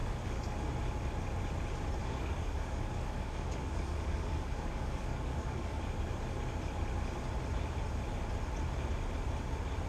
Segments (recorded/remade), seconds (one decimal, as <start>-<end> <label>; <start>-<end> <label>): 0.0-0.7 remade; 0.7-2.0 recorded; 2.0-5.8 remade; 5.8-9.9 recorded